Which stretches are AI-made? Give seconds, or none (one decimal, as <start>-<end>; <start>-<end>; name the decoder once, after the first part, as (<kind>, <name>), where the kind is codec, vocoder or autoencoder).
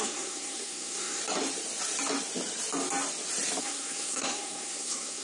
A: 0.0-1.2 (codec, SNAC); 3.6-5.2